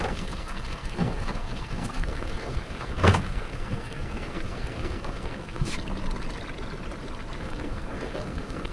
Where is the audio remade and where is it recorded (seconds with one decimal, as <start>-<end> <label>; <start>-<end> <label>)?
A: 0.0-5.7 remade; 5.7-7.4 recorded; 7.4-8.7 remade